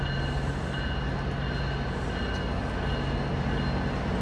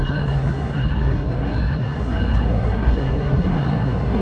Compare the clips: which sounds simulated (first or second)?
second